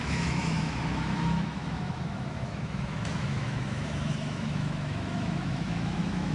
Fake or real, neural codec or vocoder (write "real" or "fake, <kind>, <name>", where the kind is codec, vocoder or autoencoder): fake, autoencoder, DAC-VAE